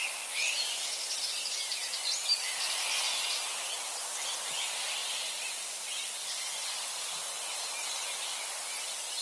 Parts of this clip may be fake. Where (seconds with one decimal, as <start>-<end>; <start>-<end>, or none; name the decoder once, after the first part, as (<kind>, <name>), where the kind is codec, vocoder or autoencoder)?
2.0-3.1 (vocoder, BigVGAN v2); 5.0-7.1; 7.8-8.4